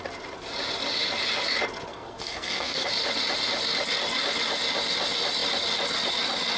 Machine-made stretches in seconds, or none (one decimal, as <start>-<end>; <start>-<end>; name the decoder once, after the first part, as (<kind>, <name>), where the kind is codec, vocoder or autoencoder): 1.9-2.9 (codec, SNAC)